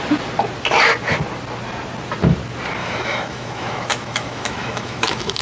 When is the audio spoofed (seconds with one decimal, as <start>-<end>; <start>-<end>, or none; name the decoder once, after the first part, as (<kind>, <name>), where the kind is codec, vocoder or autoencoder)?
2.8-5.4 (autoencoder, DAC-VAE)